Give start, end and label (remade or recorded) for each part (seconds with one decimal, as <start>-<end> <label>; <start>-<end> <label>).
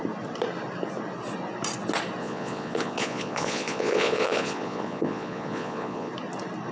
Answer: 0.0-2.2 recorded; 2.2-6.1 remade; 6.1-6.7 recorded